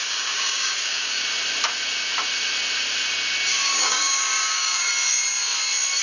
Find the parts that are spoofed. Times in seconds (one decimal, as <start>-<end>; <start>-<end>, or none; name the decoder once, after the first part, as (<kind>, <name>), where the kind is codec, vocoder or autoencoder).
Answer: 0.0-1.2 (codec, DAC); 3.5-4.9